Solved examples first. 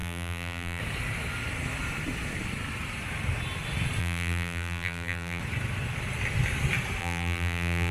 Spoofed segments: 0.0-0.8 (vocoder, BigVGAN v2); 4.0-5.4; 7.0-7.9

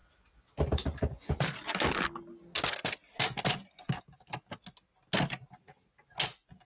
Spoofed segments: none

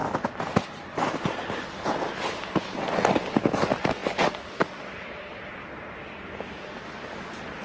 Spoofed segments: none

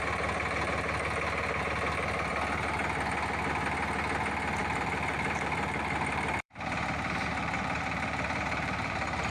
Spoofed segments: 4.6-9.3 (vocoder, BigVGAN v2)